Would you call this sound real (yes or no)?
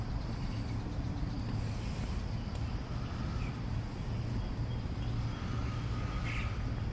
yes